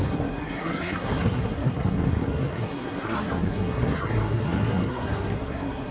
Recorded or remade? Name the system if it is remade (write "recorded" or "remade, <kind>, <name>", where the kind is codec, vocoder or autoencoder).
remade, codec, SNAC